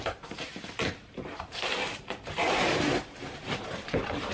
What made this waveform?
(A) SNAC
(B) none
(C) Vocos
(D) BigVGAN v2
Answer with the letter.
D